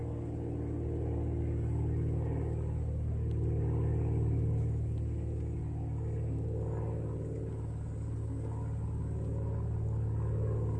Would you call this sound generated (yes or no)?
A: no